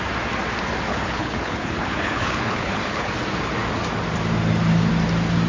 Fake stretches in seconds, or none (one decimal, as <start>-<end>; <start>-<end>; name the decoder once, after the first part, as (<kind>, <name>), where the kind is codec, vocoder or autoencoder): 0.9-3.1 (codec, HILCodec)